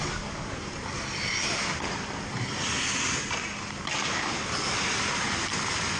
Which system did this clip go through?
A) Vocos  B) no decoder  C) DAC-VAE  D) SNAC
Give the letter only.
B